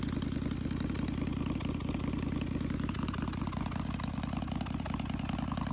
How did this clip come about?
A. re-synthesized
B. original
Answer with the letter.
B